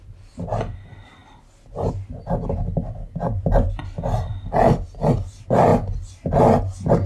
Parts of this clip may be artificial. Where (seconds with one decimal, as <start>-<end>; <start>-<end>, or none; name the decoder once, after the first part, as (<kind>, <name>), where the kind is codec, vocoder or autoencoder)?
none